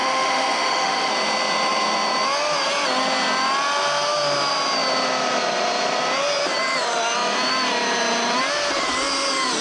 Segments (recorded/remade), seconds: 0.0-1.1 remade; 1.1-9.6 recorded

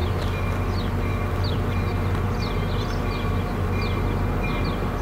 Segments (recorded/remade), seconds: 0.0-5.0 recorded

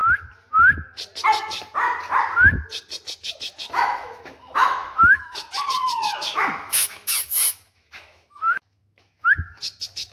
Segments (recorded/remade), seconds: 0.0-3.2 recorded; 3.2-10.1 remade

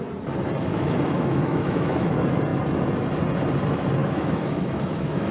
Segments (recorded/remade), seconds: 0.0-0.7 recorded; 0.7-2.1 remade; 2.1-4.0 recorded; 4.0-5.3 remade

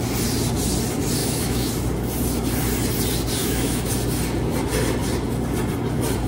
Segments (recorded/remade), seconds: 0.0-1.2 recorded; 1.2-1.7 remade; 1.7-3.4 recorded; 3.4-3.9 remade; 3.9-6.3 recorded